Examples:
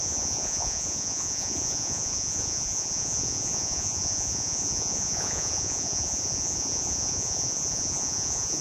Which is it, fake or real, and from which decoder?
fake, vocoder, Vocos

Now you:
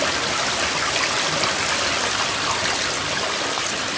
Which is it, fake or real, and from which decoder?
real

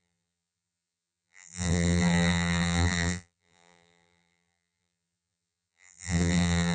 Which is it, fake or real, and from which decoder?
fake, vocoder, BigVGAN v2